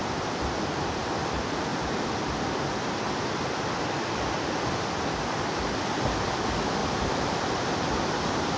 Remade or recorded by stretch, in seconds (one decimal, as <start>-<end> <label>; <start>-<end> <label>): 0.0-6.8 recorded; 6.8-7.6 remade; 7.6-8.6 recorded

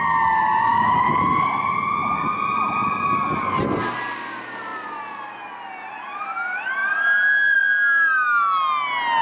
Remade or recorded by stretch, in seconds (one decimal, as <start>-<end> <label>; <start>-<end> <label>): 0.0-9.2 recorded

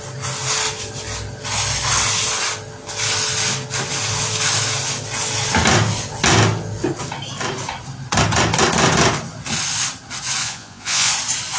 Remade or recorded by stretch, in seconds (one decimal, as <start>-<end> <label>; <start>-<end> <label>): 0.0-10.4 recorded; 10.4-11.1 remade; 11.1-11.6 recorded